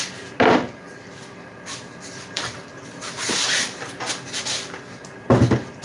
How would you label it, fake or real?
real